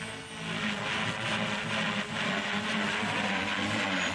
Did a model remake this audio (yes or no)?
no